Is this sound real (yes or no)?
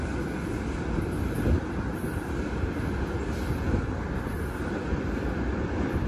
yes